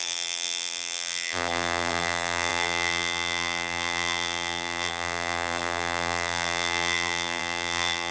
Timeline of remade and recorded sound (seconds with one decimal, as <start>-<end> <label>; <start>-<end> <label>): 0.0-8.1 remade